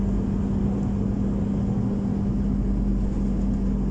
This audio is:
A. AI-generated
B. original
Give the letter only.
B